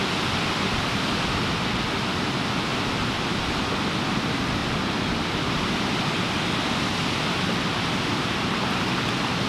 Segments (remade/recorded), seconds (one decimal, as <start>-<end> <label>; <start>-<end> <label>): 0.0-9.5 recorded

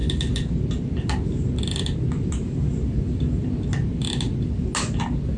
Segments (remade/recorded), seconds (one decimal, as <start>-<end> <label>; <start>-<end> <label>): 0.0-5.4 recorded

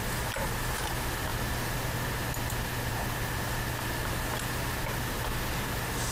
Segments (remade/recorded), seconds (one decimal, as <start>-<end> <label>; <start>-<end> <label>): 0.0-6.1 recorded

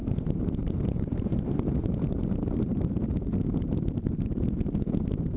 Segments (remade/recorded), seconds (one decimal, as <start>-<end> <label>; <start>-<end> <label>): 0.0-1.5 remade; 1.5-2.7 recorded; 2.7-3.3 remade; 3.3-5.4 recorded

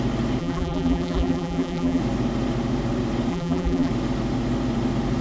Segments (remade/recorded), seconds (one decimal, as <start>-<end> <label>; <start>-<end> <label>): 0.0-0.4 recorded; 0.4-2.0 remade; 2.0-3.3 recorded; 3.3-3.9 remade; 3.9-5.2 recorded

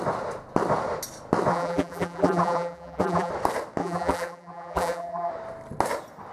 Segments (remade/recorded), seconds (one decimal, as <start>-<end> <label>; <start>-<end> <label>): 0.0-1.5 recorded; 1.5-3.3 remade; 3.3-3.8 recorded; 3.8-5.3 remade; 5.3-6.3 recorded

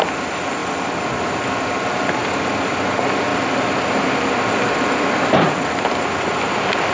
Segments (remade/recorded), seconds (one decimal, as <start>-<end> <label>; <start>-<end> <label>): 0.0-0.6 recorded; 0.6-2.4 remade; 2.4-3.3 recorded; 3.3-6.9 remade

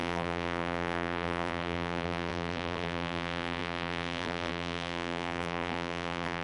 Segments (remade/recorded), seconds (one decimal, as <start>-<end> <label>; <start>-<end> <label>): 0.0-6.4 remade